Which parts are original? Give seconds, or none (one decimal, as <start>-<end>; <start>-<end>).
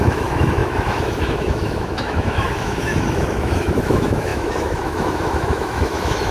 none